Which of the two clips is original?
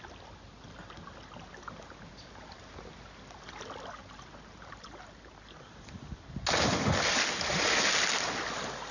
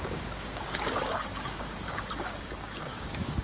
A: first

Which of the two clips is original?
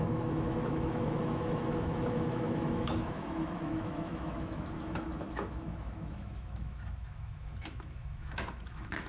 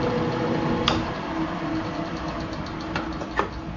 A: second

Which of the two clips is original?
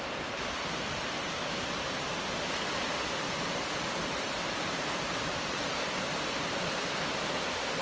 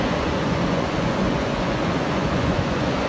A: first